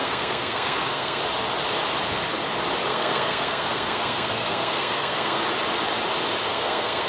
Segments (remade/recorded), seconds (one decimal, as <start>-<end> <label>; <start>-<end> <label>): 0.0-1.2 remade; 1.2-2.9 recorded; 2.9-5.4 remade; 5.4-6.5 recorded; 6.5-7.1 remade